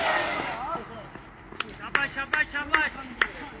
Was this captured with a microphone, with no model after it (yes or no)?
yes